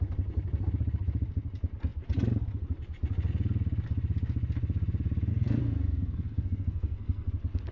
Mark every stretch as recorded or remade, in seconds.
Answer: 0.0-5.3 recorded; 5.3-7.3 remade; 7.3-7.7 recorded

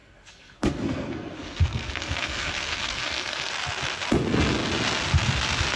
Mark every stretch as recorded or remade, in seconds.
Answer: 0.0-3.5 remade; 3.5-5.8 recorded

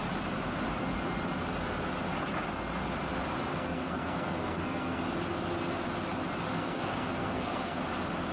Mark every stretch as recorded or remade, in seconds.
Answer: 0.0-3.5 recorded; 3.5-5.0 remade; 5.0-6.5 recorded; 6.5-7.8 remade; 7.8-8.3 recorded

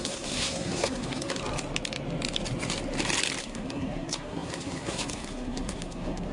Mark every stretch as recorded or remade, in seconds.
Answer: 0.0-1.4 remade; 1.4-3.4 recorded; 3.4-6.3 remade

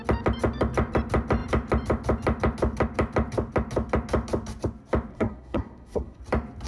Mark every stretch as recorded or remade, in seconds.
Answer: 0.0-5.1 recorded; 5.1-6.2 remade; 6.2-6.7 recorded